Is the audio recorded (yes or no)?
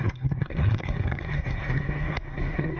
no